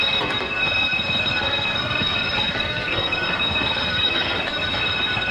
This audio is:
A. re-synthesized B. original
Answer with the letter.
A